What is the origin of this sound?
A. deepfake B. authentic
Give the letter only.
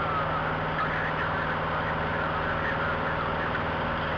B